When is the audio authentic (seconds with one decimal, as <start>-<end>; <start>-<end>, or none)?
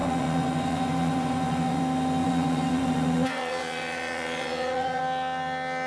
1.8-2.2; 5.0-5.9